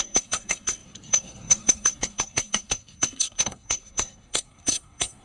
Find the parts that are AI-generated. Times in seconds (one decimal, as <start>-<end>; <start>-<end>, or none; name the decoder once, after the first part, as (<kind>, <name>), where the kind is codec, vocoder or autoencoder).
0.0-5.2 (codec, SNAC)